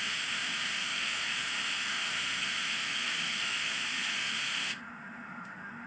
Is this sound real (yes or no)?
no